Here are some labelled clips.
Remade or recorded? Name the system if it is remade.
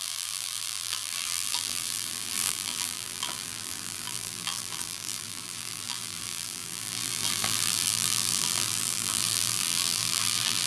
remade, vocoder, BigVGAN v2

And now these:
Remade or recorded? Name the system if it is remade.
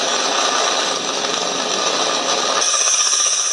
recorded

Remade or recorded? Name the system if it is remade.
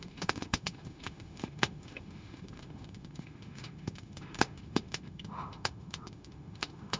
remade, autoencoder, DAC-VAE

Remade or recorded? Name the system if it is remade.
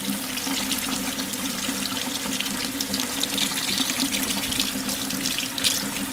recorded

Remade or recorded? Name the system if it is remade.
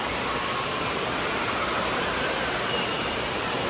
recorded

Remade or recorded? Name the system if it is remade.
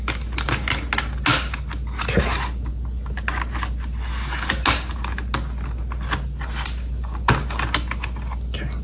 recorded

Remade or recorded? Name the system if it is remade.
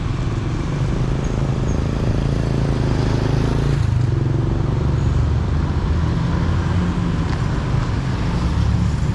recorded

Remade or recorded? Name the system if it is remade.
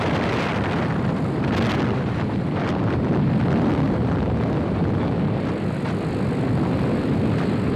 remade, vocoder, BigVGAN v2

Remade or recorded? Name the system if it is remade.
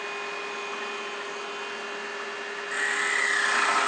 recorded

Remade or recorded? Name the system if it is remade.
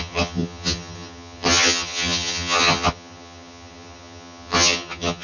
remade, vocoder, HiFi-GAN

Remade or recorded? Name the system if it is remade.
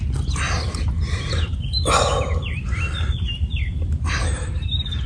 recorded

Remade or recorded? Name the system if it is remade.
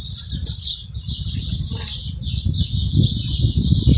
recorded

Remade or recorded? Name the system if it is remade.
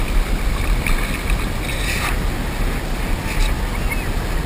recorded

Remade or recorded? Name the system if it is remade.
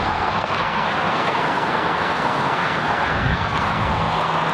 remade, codec, SNAC